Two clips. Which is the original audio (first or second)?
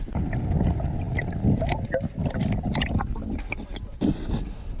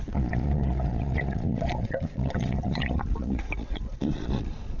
first